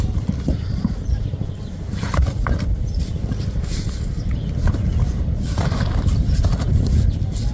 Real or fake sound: fake